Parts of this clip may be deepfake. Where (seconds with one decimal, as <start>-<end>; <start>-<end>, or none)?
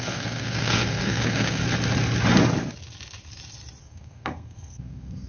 0.0-1.6; 3.8-5.3